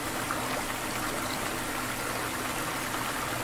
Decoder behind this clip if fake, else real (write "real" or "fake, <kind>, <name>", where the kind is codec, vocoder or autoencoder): real